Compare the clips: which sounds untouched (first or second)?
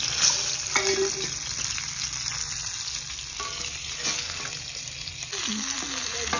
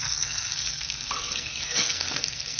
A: first